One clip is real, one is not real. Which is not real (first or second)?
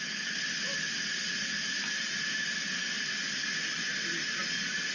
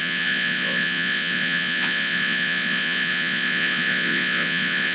second